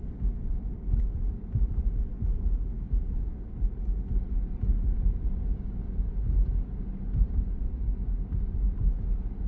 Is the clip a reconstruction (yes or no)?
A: no